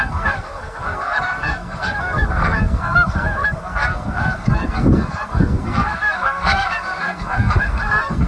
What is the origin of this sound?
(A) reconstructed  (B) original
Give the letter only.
A